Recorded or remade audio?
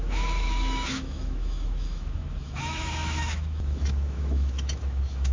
remade